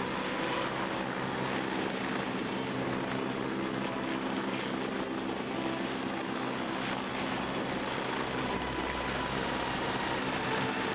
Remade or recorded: recorded